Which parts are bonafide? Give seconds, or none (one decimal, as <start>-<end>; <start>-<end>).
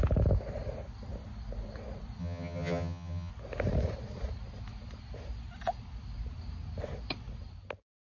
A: 0.0-2.2; 3.3-8.1